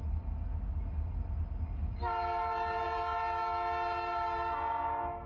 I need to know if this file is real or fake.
real